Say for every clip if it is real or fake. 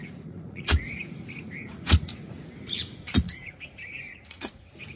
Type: fake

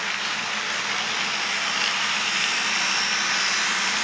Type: real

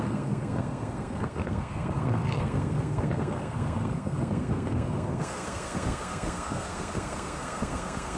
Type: fake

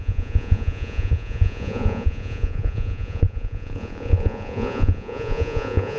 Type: fake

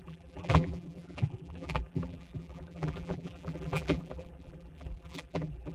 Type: fake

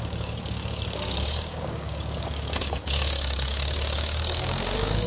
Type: fake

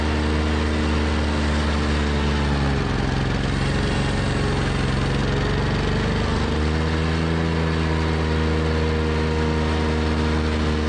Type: real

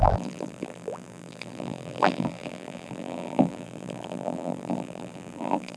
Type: fake